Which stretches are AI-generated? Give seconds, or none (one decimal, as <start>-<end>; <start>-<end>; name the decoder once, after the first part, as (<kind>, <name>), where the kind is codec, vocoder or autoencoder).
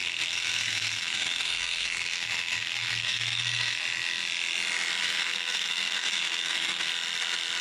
0.0-3.8 (codec, SNAC); 5.0-6.9